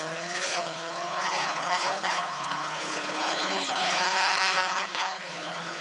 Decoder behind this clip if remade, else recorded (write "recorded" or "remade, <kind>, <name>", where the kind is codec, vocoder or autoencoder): remade, codec, HILCodec